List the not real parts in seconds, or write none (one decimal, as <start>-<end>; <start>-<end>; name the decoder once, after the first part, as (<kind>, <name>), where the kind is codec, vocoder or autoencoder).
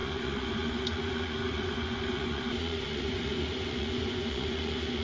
0.0-5.0 (vocoder, Vocos)